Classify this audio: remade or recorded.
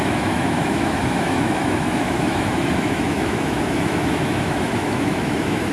remade